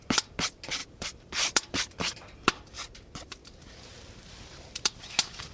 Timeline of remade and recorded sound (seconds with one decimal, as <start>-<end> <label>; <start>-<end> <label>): 0.0-0.8 recorded; 0.8-1.9 remade; 1.9-3.4 recorded; 3.4-5.1 remade; 5.1-5.5 recorded